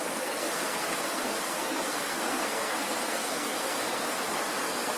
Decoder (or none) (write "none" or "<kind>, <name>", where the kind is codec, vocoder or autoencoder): codec, SNAC